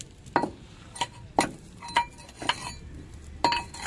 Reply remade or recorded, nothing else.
recorded